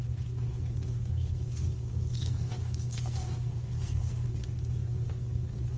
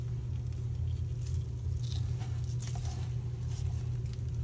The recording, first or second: second